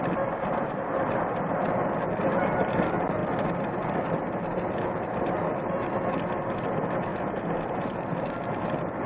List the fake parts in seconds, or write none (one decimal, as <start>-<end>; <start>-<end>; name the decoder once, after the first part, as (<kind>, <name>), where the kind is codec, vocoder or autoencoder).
none